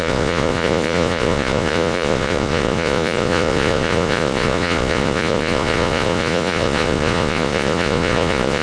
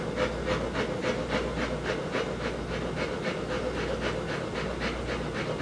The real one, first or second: second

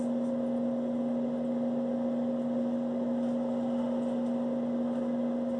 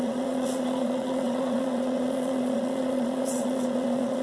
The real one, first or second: first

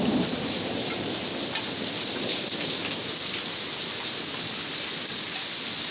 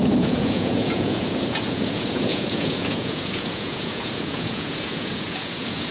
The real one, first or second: first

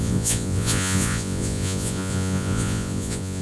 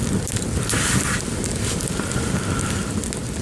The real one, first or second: second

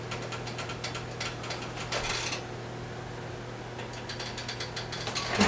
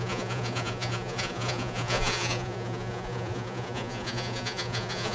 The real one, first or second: first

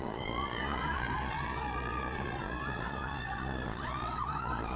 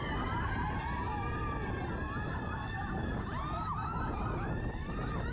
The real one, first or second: second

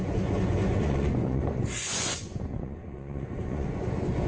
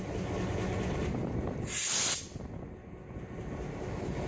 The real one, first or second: second